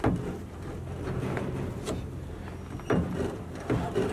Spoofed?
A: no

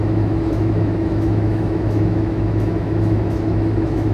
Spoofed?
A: yes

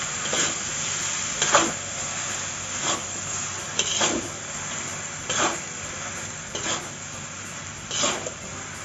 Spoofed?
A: no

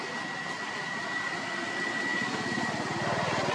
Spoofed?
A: no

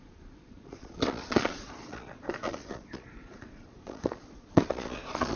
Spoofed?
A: yes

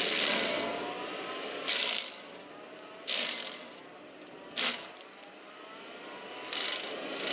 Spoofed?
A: no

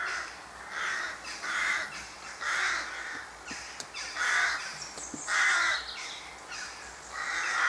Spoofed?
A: no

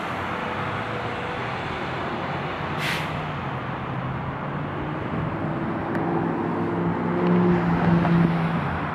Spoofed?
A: no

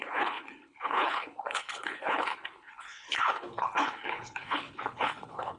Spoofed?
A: yes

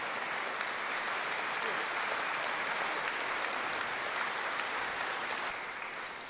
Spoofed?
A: no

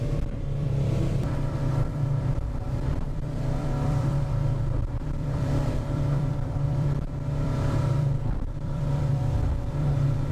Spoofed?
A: yes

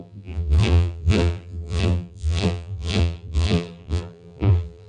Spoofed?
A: yes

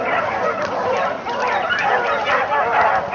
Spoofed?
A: no